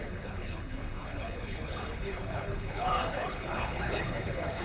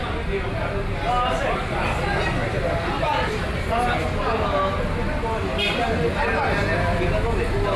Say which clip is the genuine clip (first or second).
second